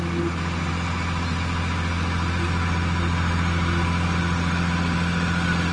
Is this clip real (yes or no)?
yes